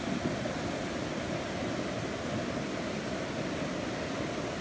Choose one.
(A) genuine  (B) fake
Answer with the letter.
A